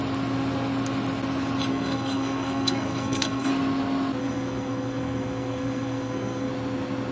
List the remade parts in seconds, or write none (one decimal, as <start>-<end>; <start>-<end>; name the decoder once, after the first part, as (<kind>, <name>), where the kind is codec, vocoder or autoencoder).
1.7-3.5 (codec, SNAC); 4.2-6.5